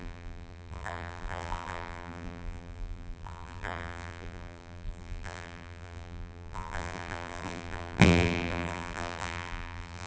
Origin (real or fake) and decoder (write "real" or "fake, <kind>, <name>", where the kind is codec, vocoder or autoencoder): fake, vocoder, BigVGAN v2